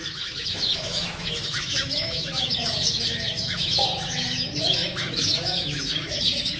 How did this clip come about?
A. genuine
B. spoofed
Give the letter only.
B